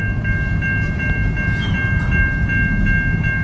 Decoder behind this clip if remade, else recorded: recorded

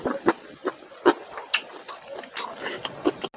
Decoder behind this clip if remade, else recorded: recorded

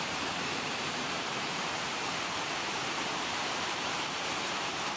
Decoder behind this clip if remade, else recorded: remade, vocoder, BigVGAN v2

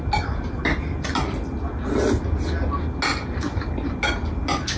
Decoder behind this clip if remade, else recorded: recorded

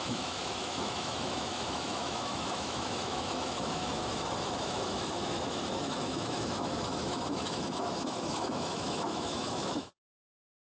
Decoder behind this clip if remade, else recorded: remade, autoencoder, DAC-VAE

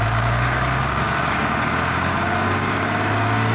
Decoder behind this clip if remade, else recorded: remade, codec, DAC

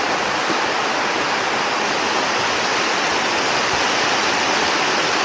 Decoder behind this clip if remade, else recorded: recorded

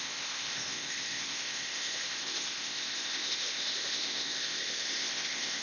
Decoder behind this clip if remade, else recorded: remade, codec, ZipCodec